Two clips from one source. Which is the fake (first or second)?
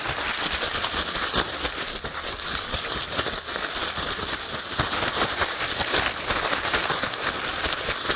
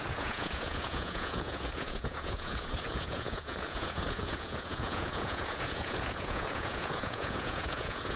second